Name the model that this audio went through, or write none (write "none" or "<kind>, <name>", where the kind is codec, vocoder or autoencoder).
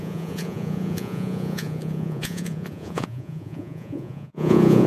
vocoder, Vocos